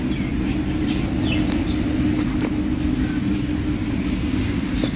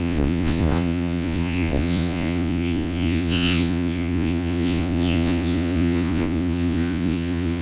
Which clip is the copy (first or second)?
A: second